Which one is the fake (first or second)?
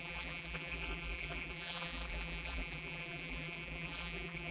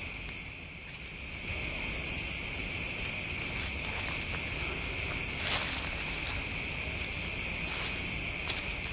first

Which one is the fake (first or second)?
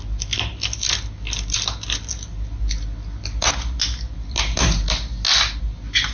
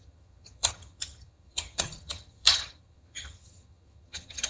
second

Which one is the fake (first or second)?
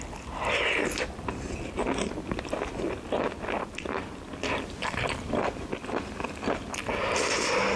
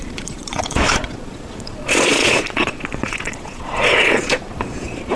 second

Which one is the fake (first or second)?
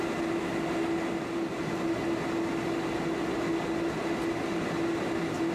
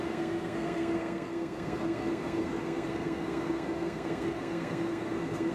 second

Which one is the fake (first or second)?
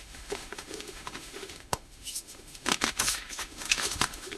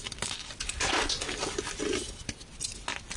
first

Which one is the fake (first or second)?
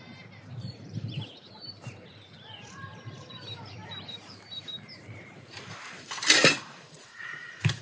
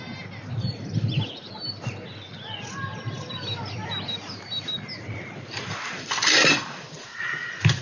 first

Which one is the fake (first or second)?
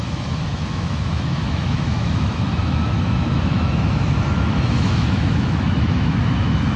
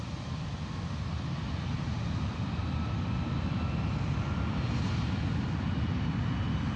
first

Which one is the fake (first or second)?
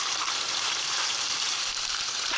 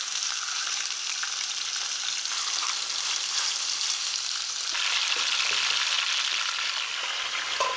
first